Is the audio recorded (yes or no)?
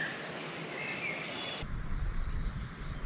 yes